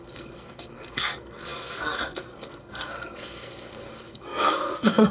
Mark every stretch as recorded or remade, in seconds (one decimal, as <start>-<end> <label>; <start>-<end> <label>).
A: 0.0-5.1 remade